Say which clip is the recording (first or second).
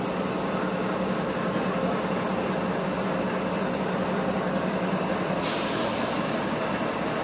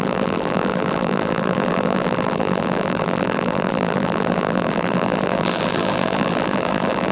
first